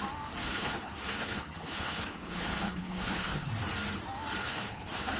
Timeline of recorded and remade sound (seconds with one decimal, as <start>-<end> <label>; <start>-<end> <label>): 0.0-0.4 recorded; 0.4-3.5 remade; 3.5-4.4 recorded; 4.4-5.2 remade